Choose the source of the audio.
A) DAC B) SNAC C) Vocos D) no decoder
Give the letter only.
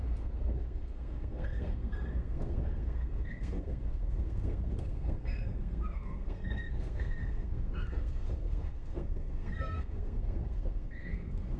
B